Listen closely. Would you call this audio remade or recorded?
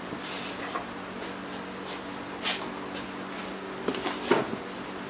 recorded